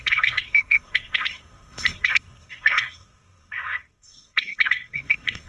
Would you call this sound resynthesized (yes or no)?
yes